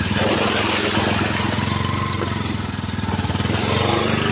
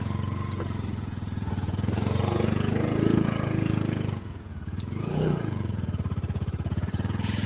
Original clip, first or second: first